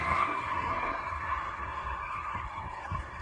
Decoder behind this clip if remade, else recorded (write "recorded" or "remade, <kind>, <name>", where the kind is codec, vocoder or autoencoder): remade, codec, SNAC